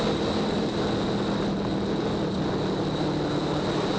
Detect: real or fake real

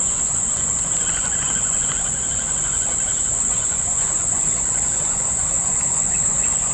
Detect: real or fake fake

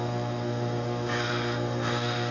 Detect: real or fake fake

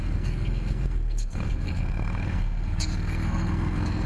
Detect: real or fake fake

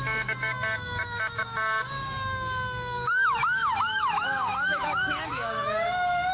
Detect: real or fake fake